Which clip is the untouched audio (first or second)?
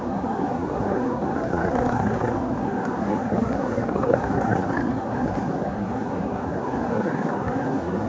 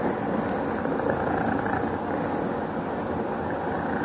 second